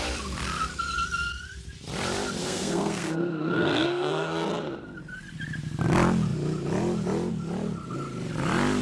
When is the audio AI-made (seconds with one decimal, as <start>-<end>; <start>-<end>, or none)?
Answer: 2.4-4.5